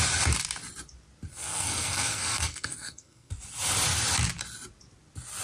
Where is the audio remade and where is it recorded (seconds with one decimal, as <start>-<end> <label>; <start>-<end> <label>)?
0.0-1.3 recorded; 1.3-3.3 remade; 3.3-5.4 recorded